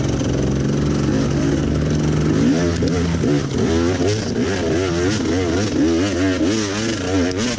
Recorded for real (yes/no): yes